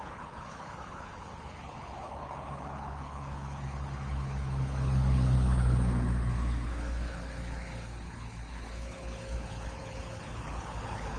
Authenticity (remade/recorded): remade